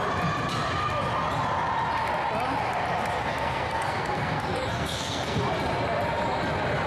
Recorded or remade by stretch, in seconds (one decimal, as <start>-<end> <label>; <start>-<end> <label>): 0.0-3.2 recorded; 3.2-5.4 remade; 5.4-6.9 recorded